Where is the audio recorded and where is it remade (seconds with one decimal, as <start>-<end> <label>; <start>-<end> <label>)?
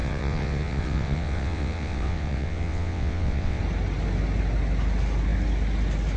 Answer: 0.0-3.6 remade; 3.6-6.2 recorded